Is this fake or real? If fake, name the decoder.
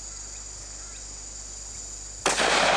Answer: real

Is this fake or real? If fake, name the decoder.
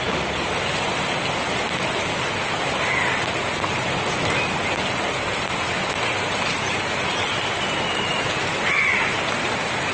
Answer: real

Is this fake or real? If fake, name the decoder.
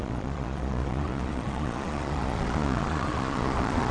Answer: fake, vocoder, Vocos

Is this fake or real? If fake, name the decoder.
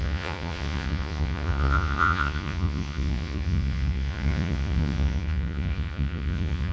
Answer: fake, vocoder, Vocos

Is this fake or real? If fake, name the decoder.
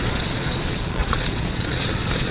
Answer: fake, vocoder, Vocos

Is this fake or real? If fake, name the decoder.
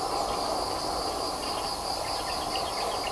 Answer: real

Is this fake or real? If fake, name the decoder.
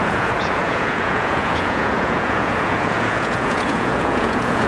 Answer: fake, vocoder, Vocos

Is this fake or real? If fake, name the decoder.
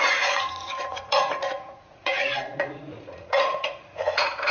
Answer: fake, vocoder, Vocos